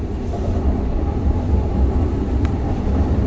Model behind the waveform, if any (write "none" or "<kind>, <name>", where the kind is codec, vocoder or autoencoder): none